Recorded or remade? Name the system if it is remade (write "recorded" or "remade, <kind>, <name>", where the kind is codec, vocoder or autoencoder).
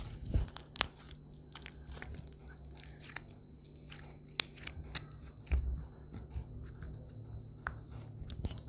recorded